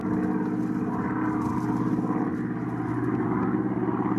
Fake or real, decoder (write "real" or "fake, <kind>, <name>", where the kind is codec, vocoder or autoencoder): real